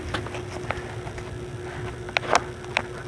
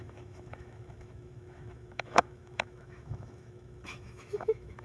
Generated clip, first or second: second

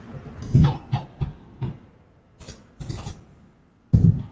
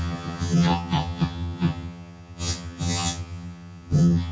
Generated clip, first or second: second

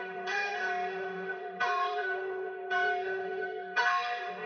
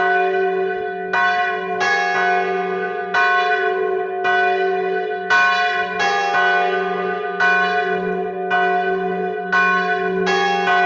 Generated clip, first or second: first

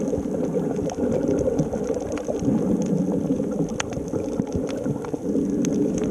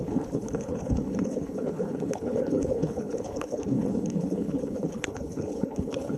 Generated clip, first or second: second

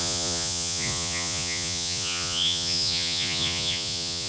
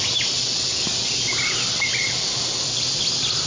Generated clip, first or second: first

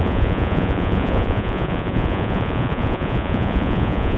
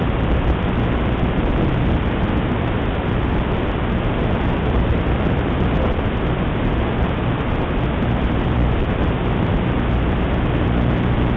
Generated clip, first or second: first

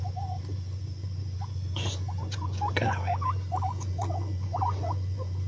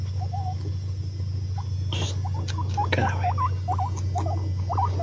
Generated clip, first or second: first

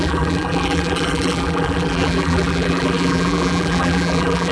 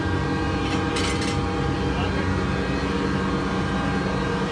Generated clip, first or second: first